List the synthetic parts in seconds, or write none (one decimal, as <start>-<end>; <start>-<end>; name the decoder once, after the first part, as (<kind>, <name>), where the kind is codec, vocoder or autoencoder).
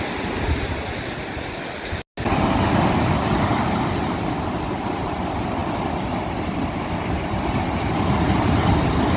2.3-3.9 (vocoder, BigVGAN v2); 5.6-9.2